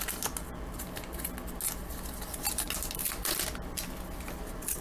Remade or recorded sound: recorded